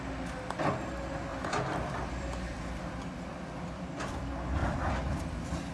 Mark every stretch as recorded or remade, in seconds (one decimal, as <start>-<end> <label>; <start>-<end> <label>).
0.0-1.3 recorded; 1.3-4.1 remade; 4.1-5.7 recorded